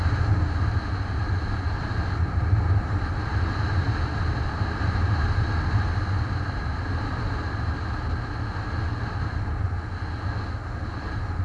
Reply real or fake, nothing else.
real